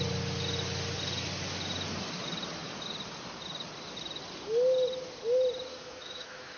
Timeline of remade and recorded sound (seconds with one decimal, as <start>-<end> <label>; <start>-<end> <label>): 0.0-5.7 recorded; 5.7-6.6 remade